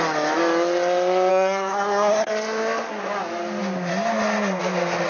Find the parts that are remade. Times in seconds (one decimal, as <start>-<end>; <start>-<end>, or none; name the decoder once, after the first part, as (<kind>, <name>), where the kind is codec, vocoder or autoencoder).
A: 1.3-2.3 (codec, SNAC)